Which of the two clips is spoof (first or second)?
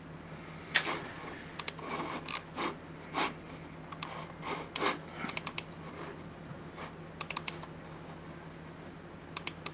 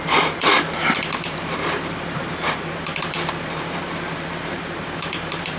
second